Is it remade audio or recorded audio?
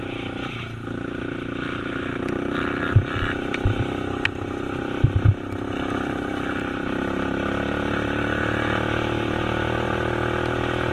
recorded